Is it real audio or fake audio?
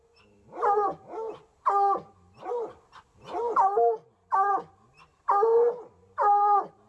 real